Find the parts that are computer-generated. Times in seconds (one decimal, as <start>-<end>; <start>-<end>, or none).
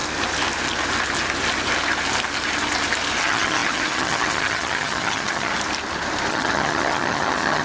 3.2-5.5; 6.3-7.6